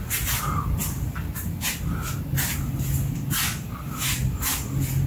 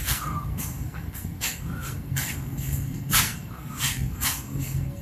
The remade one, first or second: second